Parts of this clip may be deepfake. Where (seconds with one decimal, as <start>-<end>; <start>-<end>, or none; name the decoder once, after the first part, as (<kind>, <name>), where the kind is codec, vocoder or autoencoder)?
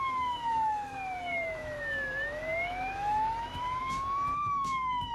0.0-5.1 (autoencoder, DAC-VAE)